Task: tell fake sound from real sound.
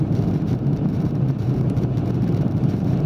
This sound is fake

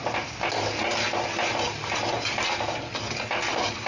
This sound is real